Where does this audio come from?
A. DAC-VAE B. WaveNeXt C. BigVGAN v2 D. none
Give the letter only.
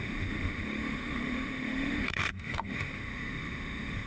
A